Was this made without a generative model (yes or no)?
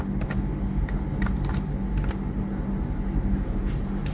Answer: yes